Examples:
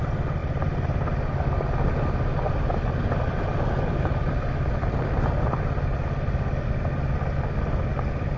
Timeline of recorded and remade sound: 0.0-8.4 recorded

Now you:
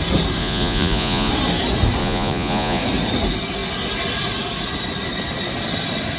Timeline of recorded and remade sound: 0.0-0.4 recorded; 0.4-1.3 remade; 1.3-2.0 recorded; 2.0-2.8 remade; 2.8-6.2 recorded